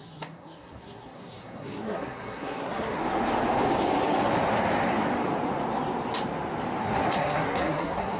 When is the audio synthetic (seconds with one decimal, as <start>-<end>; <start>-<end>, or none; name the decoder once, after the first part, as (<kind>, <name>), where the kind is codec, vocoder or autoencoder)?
0.0-3.0 (codec, SNAC); 6.8-8.2